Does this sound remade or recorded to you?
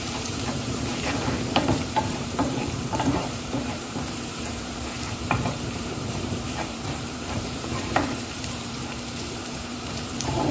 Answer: remade